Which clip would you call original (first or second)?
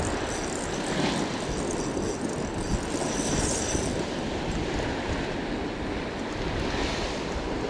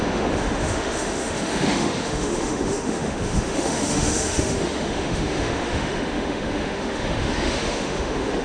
first